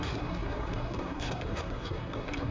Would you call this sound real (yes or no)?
no